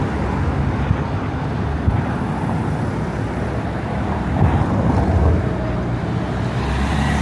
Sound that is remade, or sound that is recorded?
recorded